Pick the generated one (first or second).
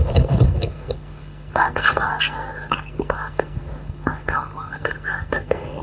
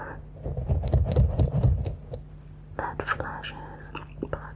first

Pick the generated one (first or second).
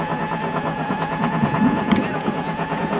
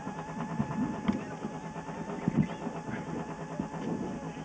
first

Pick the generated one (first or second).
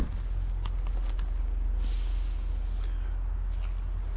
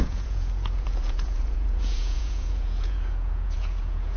second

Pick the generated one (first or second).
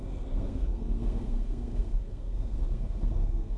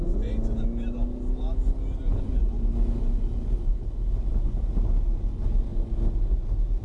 first